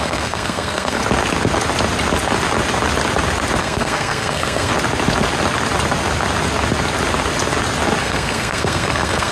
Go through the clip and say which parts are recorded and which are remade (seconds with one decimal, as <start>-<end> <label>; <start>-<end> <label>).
0.0-1.0 remade; 1.0-3.6 recorded; 3.6-4.7 remade; 4.7-8.0 recorded; 8.0-9.3 remade